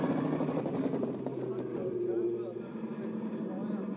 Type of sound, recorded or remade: recorded